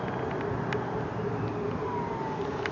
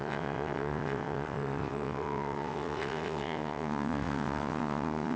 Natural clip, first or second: first